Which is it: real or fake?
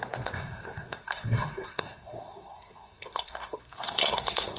fake